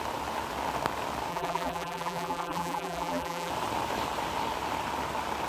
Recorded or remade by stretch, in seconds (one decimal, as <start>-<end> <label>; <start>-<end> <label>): 0.0-1.3 recorded; 1.3-3.5 remade; 3.5-5.5 recorded